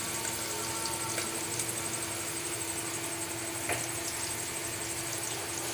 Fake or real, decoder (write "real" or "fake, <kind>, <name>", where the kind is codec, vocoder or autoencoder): real